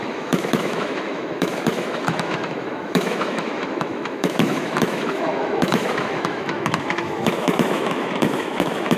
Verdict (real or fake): fake